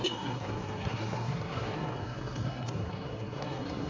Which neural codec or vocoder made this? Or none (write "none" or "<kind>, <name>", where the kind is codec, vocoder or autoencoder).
codec, SNAC